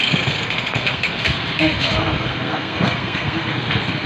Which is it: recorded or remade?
remade